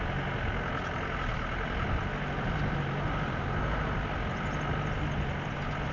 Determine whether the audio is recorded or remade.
recorded